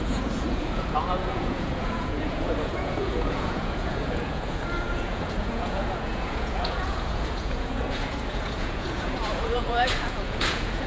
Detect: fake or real fake